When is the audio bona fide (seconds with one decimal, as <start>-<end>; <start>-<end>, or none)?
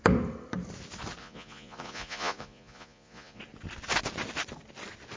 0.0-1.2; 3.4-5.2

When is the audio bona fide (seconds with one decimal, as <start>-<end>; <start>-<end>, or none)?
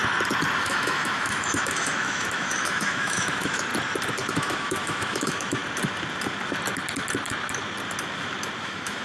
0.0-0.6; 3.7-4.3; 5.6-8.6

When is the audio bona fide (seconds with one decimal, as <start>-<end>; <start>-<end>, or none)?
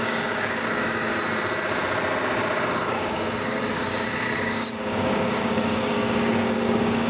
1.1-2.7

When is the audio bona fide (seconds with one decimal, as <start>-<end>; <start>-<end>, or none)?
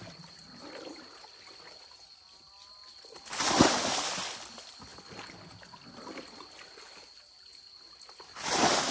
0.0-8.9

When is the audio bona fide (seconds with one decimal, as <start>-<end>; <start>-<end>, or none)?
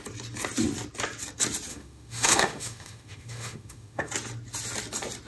0.0-1.7; 4.1-5.3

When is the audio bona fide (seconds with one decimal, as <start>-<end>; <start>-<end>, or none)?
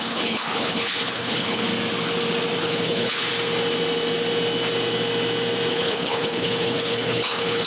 1.7-2.6; 3.3-5.7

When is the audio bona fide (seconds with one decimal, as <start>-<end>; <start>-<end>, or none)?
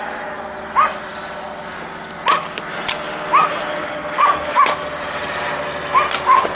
0.0-3.8; 4.6-6.5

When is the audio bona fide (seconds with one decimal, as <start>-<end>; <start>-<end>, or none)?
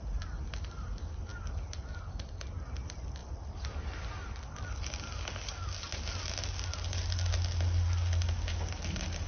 0.0-9.3